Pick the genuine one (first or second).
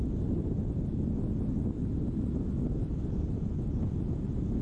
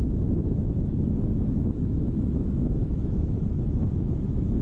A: first